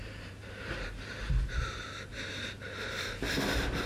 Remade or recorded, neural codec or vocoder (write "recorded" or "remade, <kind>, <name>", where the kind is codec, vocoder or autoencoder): remade, vocoder, BigVGAN v2